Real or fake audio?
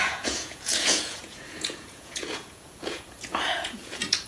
fake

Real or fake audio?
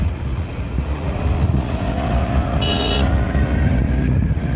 fake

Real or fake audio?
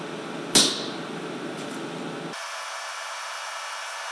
real